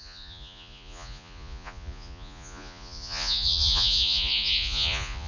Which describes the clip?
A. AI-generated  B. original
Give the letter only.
A